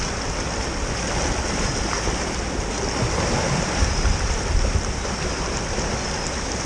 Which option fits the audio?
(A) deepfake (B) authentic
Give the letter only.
B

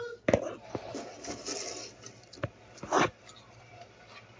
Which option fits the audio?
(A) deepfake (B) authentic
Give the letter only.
B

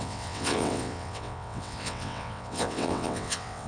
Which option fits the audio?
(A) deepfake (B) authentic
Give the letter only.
A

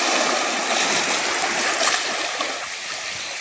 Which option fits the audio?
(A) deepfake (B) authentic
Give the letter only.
B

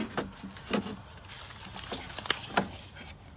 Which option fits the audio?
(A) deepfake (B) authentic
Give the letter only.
B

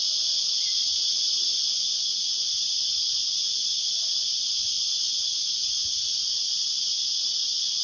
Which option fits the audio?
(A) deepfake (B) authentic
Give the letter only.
B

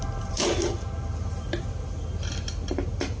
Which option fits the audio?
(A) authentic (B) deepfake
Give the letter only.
A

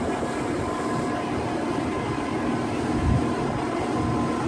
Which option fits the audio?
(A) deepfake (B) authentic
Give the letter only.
B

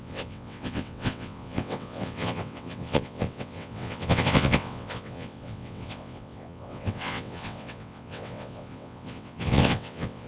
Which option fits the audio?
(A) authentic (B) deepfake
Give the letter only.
B